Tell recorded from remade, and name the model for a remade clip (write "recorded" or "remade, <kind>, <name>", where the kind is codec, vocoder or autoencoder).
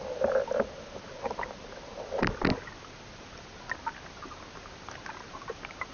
recorded